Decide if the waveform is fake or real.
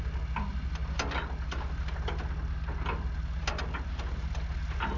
real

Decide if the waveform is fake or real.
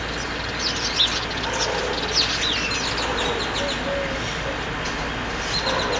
real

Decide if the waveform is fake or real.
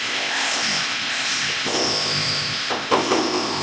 fake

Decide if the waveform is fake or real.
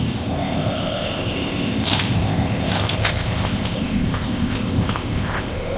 fake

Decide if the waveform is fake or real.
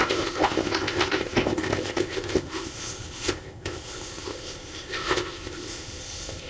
fake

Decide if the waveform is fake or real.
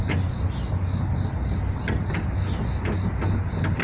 real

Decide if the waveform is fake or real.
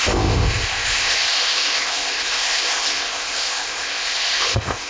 fake